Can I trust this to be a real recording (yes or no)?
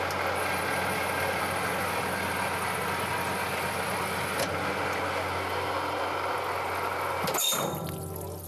yes